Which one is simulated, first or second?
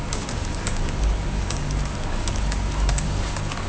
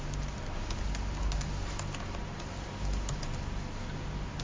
first